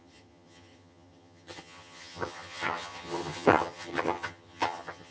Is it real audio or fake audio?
fake